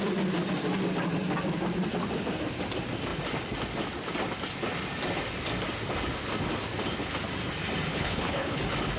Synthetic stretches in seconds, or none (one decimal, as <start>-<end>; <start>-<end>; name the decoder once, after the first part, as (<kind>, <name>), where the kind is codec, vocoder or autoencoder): 7.9-8.6 (codec, HILCodec)